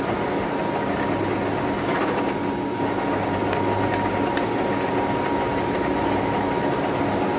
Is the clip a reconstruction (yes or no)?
no